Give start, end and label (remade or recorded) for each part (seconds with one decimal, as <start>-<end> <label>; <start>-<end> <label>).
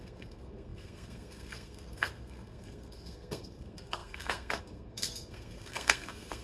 0.0-6.4 remade